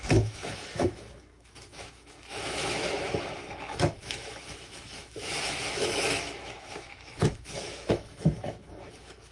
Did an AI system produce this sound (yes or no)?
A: yes